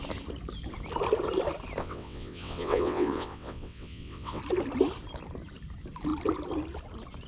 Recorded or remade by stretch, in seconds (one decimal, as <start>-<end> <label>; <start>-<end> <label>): 0.0-1.8 recorded; 1.8-4.4 remade; 4.4-7.3 recorded